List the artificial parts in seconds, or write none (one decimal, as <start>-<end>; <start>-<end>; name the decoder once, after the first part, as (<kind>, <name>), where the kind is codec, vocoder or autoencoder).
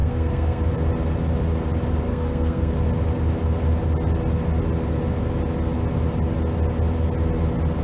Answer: 0.0-0.7 (codec, SNAC); 2.1-2.7